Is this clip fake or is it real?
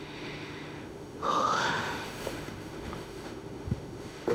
fake